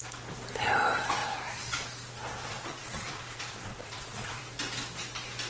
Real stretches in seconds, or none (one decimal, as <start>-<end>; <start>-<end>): 0.0-2.5; 4.4-5.5